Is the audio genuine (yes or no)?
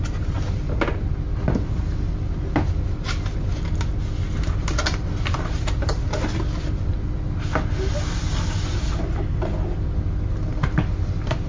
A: yes